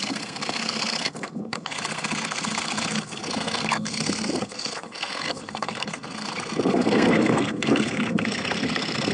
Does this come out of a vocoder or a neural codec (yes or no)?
yes